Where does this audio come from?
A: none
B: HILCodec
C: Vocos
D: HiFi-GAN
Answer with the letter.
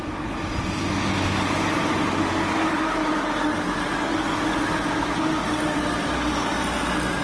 A